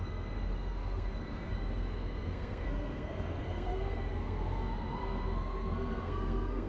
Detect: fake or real fake